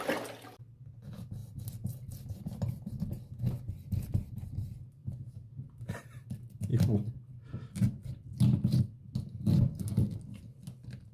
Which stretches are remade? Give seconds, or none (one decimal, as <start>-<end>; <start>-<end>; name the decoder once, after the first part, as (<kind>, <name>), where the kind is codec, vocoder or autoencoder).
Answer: 5.0-5.7 (vocoder, Vocos)